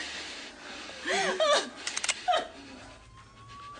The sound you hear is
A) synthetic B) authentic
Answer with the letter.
B